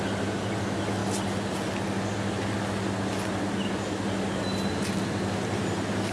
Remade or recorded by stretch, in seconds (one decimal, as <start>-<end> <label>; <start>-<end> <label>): 0.0-6.1 recorded